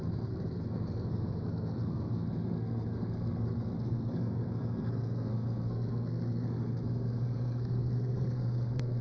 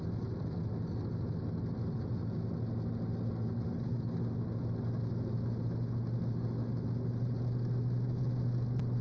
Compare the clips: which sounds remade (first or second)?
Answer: first